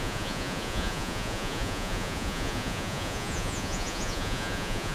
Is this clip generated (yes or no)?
yes